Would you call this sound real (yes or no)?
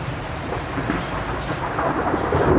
no